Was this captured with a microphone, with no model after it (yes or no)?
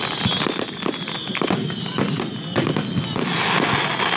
yes